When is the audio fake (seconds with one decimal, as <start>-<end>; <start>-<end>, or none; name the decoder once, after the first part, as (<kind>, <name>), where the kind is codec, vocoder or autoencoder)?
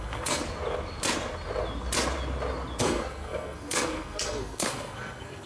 0.0-0.4 (codec, SNAC); 2.8-5.5